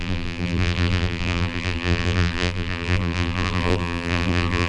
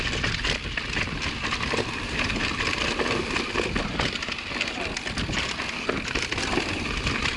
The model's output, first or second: first